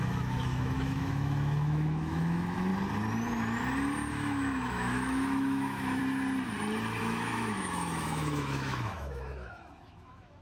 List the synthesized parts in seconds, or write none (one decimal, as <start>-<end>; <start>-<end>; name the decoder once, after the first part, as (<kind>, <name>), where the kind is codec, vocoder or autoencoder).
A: 0.0-2.7 (autoencoder, DAC-VAE); 4.1-6.0; 7.0-10.4